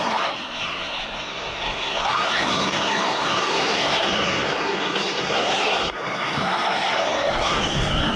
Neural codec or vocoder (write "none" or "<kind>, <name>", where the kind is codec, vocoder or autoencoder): codec, SNAC